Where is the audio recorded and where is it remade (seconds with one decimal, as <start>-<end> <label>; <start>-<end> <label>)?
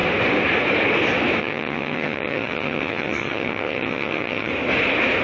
0.0-1.4 recorded; 1.4-4.5 remade; 4.5-5.2 recorded